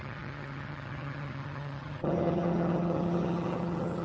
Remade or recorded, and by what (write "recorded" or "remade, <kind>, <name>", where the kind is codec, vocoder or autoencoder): remade, vocoder, HiFi-GAN